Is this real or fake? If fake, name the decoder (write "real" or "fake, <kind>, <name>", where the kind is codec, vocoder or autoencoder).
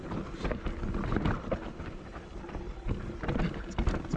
real